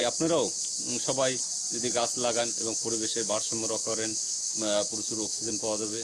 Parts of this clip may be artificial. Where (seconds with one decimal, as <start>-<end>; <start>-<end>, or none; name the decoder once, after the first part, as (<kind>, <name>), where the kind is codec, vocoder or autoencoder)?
2.4-6.0 (autoencoder, DAC-VAE)

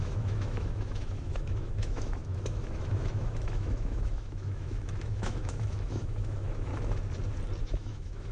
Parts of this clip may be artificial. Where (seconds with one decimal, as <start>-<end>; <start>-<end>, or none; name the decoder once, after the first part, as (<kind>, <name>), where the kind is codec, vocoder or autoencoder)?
0.0-6.7 (autoencoder, DAC-VAE); 7.6-8.3

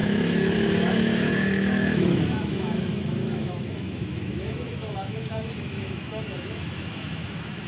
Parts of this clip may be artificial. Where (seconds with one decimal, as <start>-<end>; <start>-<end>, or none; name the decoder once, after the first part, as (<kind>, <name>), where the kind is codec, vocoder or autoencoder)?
0.0-7.7 (autoencoder, DAC-VAE)

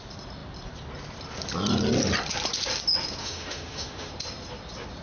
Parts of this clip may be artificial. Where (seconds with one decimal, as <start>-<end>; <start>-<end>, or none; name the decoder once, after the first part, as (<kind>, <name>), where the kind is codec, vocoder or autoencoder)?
3.2-4.1 (autoencoder, DAC-VAE)

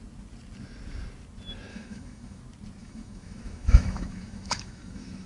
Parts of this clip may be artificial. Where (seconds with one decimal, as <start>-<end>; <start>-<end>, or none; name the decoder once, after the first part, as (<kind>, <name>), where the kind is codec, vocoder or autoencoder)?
1.7-2.4 (autoencoder, DAC-VAE); 2.8-5.3

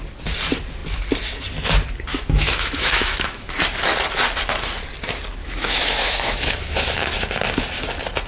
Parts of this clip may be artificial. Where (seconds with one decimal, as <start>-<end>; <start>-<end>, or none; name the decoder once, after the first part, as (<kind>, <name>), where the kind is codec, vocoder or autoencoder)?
2.1-3.6 (autoencoder, DAC-VAE); 5.4-7.1

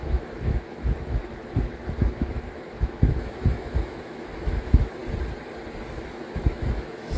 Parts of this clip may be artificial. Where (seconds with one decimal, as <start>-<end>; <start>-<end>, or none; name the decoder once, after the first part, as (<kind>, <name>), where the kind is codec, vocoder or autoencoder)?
0.0-5.0 (autoencoder, DAC-VAE); 5.9-7.2

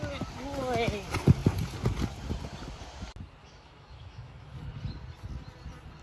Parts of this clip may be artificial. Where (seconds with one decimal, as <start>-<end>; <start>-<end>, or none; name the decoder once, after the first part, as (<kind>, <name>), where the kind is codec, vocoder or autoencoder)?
3.4-4.6 (autoencoder, DAC-VAE)